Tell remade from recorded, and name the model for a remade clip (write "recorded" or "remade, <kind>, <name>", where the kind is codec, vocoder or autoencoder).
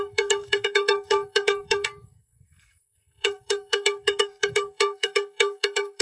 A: remade, codec, SNAC